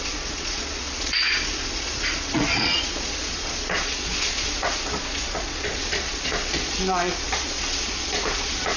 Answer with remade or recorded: remade